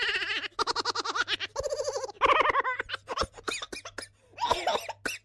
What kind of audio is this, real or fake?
real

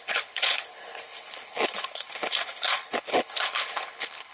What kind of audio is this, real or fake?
fake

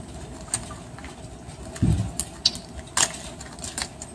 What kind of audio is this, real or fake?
real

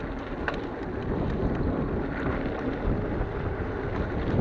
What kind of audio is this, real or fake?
real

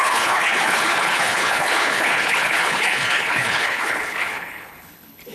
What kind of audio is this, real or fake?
fake